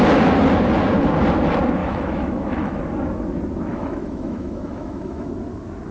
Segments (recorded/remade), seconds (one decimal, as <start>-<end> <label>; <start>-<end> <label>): 0.0-1.8 recorded; 1.8-2.8 remade; 2.8-3.7 recorded; 3.7-5.3 remade; 5.3-5.9 recorded

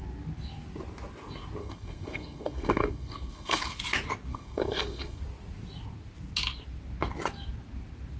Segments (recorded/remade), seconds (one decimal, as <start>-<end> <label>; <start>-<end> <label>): 0.0-1.6 recorded; 1.6-3.8 remade; 3.8-4.3 recorded; 4.3-5.2 remade; 5.2-8.2 recorded

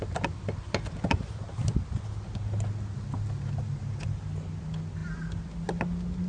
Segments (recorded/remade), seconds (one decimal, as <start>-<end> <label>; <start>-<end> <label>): 0.0-6.3 recorded

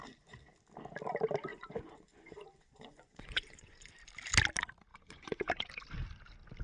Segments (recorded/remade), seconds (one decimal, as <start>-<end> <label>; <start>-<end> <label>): 0.0-1.5 recorded; 1.5-3.9 remade; 3.9-4.9 recorded; 4.9-5.5 remade; 5.5-6.6 recorded